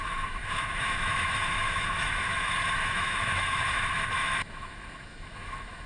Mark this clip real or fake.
fake